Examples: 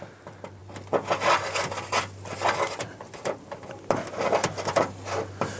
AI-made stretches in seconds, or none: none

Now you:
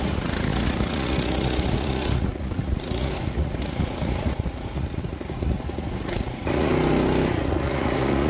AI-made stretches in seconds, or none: 0.0-6.7 (vocoder, Vocos); 7.3-8.3

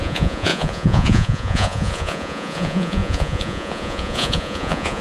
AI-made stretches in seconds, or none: 0.0-5.0 (vocoder, Vocos)

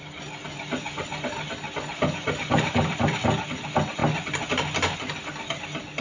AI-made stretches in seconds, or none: none

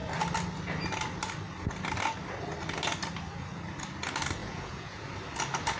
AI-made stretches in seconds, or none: 4.4-5.1 (vocoder, Vocos)

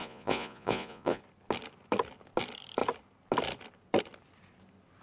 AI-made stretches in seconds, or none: 0.0-1.2 (vocoder, Vocos)

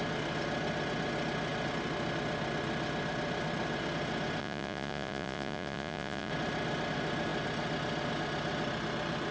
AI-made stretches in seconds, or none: 4.4-6.3 (vocoder, Vocos)

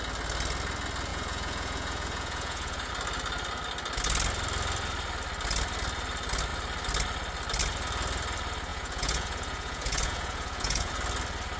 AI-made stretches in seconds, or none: 1.1-2.9 (vocoder, Vocos); 8.7-10.9